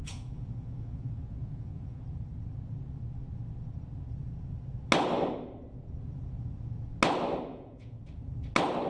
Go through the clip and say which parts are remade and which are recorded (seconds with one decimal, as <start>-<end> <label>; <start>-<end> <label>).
0.0-2.0 remade; 2.0-7.5 recorded; 7.5-8.0 remade; 8.0-8.9 recorded